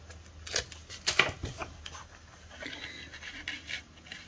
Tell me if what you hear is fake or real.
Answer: real